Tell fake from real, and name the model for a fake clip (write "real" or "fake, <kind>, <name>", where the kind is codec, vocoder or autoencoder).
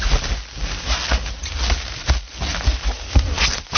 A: real